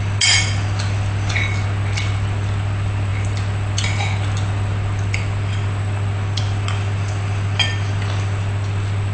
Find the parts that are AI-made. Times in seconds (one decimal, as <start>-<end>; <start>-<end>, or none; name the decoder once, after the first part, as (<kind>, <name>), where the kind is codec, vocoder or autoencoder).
none